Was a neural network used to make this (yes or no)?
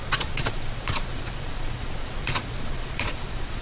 yes